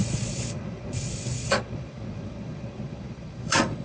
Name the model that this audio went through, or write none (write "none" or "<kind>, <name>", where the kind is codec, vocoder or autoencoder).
vocoder, Vocos